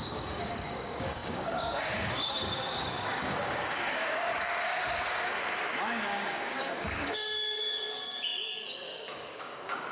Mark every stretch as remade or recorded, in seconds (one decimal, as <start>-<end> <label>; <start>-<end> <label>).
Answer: 0.0-9.9 remade